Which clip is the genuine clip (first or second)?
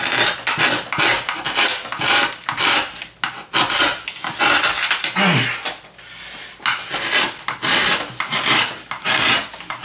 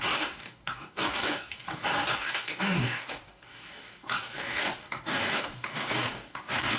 first